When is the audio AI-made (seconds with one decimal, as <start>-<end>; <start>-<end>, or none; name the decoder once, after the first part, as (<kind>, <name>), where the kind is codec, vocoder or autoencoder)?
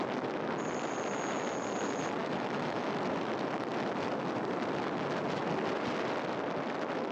2.2-2.9 (autoencoder, DAC-VAE)